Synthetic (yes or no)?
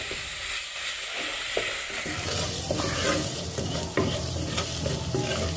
no